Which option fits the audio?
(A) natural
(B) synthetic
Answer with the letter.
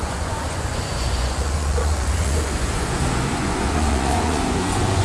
B